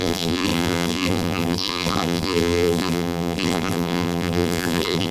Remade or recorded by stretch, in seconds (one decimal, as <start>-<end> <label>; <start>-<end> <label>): 0.0-5.1 remade